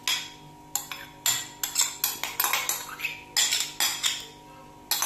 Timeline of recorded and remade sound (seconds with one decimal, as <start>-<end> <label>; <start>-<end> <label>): 0.0-5.1 recorded